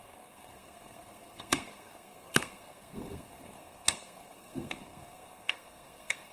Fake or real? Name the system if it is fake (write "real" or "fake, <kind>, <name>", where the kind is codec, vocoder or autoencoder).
fake, codec, SNAC